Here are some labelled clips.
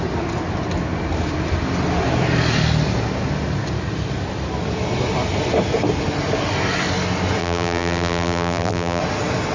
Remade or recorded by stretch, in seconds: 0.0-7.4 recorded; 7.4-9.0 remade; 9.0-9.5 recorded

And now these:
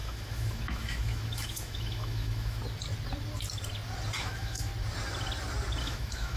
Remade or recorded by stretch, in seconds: 0.0-2.6 remade; 2.6-4.2 recorded; 4.2-4.7 remade; 4.7-5.8 recorded; 5.8-6.4 remade

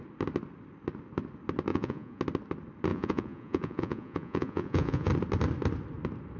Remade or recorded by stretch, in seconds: 0.0-1.7 recorded; 1.7-2.2 remade; 2.2-2.9 recorded; 2.9-5.1 remade; 5.1-6.4 recorded

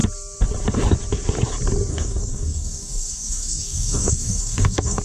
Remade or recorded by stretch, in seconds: 0.0-1.9 recorded; 1.9-5.0 remade